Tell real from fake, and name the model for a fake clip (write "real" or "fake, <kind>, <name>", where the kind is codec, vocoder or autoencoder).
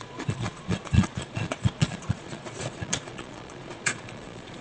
fake, vocoder, Vocos